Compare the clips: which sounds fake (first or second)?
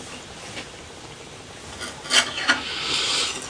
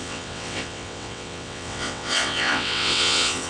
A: second